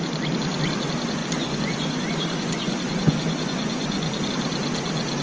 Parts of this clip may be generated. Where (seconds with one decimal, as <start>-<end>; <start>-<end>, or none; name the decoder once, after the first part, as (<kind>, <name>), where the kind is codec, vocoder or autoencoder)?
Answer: 1.2-4.3 (vocoder, Vocos)